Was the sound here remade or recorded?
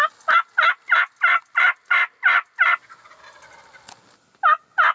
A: recorded